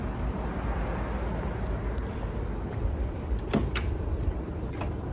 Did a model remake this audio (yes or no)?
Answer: no